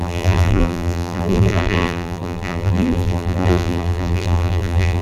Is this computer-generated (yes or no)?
yes